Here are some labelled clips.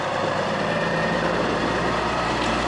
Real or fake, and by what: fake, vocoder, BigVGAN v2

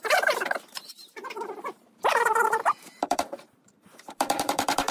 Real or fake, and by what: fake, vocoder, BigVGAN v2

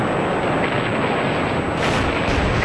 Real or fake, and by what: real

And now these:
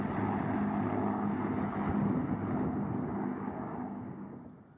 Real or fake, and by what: real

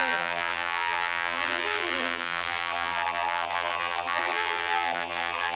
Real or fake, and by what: fake, vocoder, BigVGAN v2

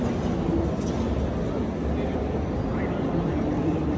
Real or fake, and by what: real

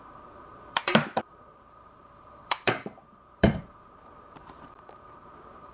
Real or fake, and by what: fake, vocoder, BigVGAN v2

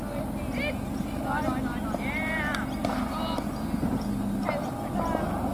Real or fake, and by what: real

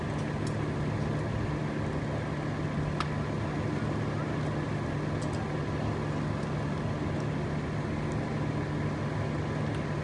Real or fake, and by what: real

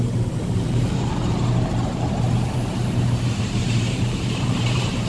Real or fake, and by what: fake, vocoder, BigVGAN v2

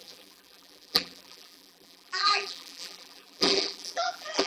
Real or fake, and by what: fake, vocoder, BigVGAN v2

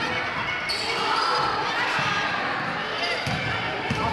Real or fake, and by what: real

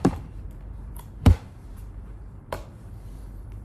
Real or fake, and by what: fake, vocoder, BigVGAN v2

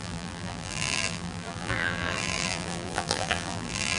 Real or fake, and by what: fake, vocoder, BigVGAN v2